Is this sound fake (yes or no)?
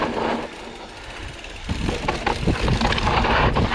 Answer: no